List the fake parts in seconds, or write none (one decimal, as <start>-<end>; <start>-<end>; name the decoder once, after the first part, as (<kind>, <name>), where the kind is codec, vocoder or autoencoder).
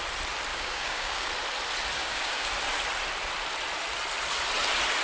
0.5-1.3 (codec, DAC); 2.0-2.5